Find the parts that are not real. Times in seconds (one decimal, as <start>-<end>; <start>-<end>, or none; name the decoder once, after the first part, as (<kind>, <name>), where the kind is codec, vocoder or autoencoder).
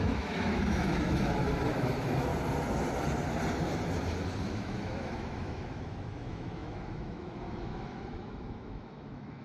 0.0-2.3 (autoencoder, DAC-VAE); 4.4-9.4